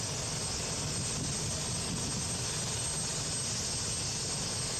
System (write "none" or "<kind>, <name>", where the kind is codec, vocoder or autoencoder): none